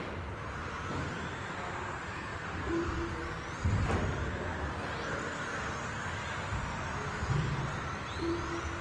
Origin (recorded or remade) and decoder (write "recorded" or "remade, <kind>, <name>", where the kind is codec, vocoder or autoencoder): recorded